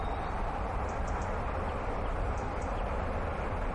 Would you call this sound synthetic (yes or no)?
yes